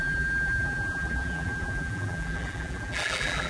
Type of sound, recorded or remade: remade